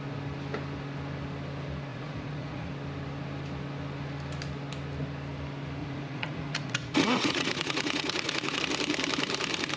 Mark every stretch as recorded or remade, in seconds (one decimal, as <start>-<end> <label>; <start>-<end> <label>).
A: 0.0-1.9 recorded; 1.9-2.7 remade; 2.7-5.8 recorded; 5.8-8.6 remade; 8.6-9.8 recorded